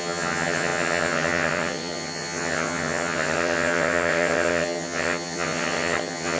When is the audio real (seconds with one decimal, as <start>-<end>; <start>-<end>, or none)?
none